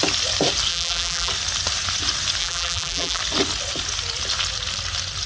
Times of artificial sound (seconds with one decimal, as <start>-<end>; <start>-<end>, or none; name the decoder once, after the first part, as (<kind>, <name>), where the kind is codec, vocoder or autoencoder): 0.7-1.3 (vocoder, BigVGAN v2); 2.4-3.2